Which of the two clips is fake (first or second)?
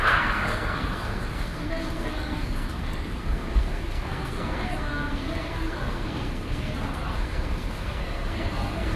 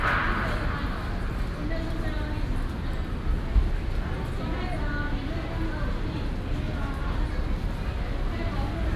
first